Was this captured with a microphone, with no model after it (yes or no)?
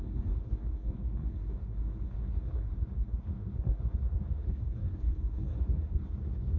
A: no